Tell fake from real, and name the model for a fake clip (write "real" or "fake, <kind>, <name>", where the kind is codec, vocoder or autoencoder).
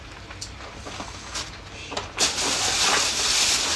real